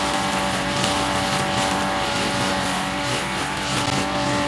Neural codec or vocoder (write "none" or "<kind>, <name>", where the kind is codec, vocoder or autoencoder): none